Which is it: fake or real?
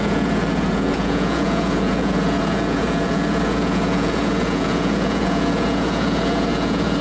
fake